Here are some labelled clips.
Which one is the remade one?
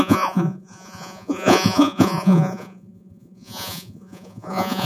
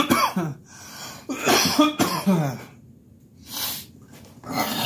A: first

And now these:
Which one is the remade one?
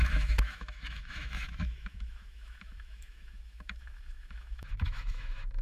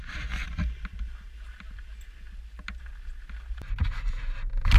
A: first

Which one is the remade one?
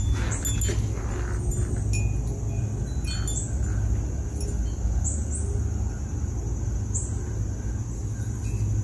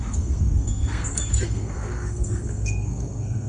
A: second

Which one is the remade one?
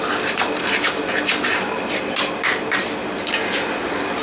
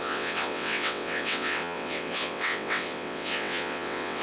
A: second